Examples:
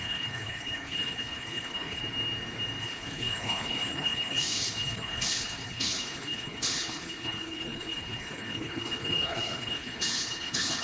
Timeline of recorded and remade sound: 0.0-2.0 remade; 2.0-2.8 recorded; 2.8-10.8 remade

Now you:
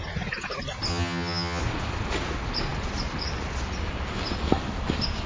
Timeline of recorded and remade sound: 0.0-0.9 recorded; 0.9-1.6 remade; 1.6-5.3 recorded

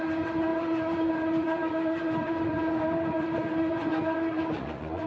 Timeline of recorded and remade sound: 0.0-5.1 remade

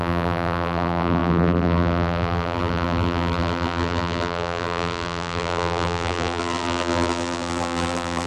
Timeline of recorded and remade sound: 0.0-8.3 remade

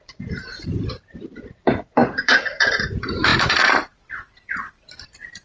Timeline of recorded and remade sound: 0.0-5.4 remade

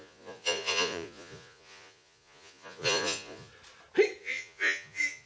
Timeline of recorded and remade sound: 0.0-3.5 remade; 3.5-4.2 recorded; 4.2-5.3 remade

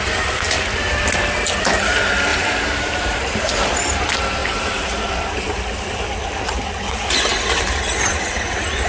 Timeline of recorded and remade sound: 0.0-2.3 recorded; 2.3-3.5 remade; 3.5-4.4 recorded; 4.4-5.1 remade; 5.1-8.9 recorded

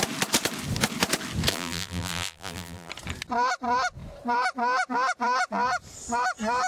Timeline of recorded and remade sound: 0.0-1.5 recorded; 1.5-2.9 remade; 2.9-6.7 recorded